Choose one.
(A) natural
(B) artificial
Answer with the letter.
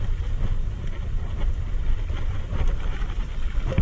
A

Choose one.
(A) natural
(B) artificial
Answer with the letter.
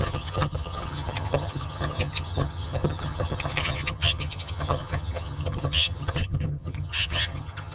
B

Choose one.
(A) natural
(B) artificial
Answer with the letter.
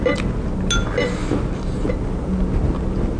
A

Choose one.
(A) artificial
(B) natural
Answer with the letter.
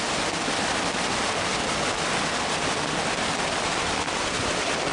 B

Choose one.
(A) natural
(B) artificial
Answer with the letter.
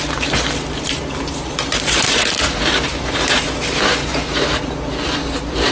B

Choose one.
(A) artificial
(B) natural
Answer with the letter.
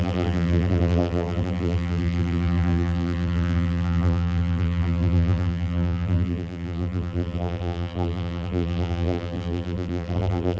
A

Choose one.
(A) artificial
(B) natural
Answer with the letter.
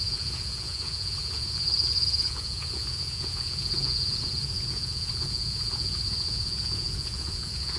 A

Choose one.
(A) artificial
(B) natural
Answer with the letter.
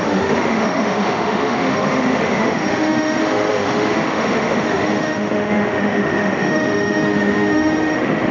A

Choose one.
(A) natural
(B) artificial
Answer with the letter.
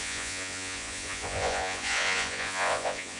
B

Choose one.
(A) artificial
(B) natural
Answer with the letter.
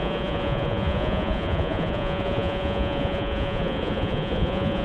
A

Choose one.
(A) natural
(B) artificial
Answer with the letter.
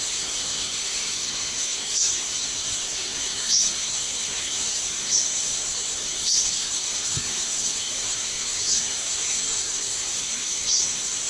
B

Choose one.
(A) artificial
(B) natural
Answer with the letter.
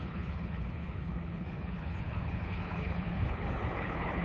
A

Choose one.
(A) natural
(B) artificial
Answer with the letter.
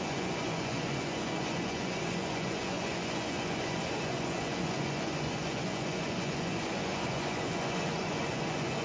B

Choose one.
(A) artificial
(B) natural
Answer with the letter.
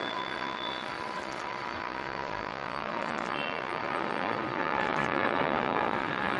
A